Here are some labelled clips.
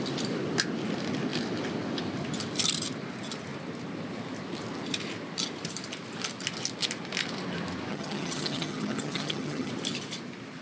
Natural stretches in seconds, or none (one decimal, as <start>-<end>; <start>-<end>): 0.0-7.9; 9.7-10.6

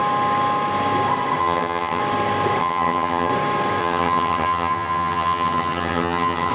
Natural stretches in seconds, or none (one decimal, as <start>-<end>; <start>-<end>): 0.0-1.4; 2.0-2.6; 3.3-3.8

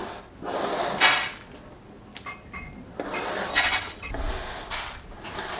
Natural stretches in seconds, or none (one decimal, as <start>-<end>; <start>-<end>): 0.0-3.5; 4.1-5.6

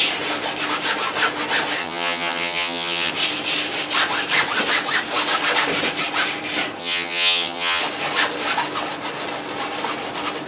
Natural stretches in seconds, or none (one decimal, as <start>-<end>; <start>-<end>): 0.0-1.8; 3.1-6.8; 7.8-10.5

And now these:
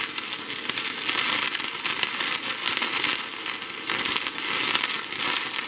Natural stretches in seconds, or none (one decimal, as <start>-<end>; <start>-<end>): 0.0-5.7

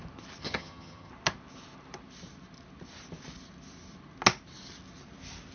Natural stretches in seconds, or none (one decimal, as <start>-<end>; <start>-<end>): 0.0-0.4; 1.1-5.5

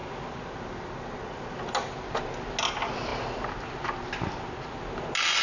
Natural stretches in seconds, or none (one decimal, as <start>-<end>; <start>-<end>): 0.0-5.4

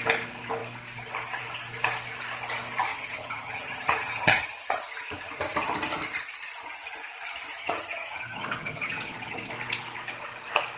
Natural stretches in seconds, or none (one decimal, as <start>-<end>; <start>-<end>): 0.0-2.9; 4.8-7.6; 9.5-10.8